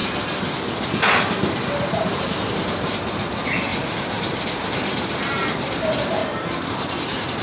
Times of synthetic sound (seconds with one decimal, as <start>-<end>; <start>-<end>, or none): 1.3-7.4